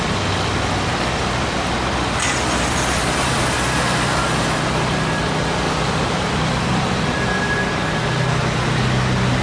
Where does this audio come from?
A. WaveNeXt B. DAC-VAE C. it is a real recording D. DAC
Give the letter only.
C